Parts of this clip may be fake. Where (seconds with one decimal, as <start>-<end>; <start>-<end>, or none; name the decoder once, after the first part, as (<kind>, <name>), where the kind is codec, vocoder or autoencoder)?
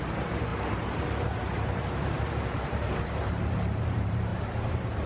0.0-5.1 (vocoder, BigVGAN v2)